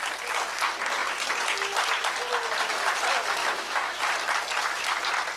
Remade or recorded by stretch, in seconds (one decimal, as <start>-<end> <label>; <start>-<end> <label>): 0.0-3.4 recorded; 3.4-4.0 remade; 4.0-5.4 recorded